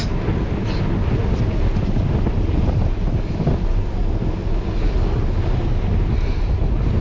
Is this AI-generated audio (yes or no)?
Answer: no